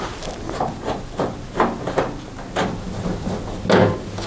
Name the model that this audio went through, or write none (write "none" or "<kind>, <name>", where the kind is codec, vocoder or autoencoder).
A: none